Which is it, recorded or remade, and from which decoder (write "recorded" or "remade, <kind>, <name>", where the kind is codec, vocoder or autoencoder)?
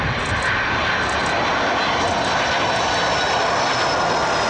recorded